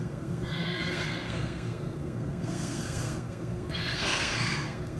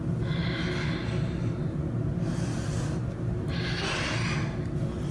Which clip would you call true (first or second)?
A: second